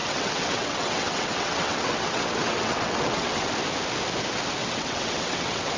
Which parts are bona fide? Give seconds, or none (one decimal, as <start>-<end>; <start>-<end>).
3.5-4.6